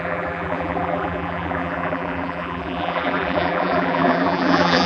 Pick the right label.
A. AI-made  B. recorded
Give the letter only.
A